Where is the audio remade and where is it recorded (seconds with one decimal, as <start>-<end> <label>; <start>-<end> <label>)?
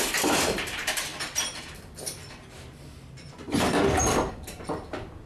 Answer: 0.0-5.3 recorded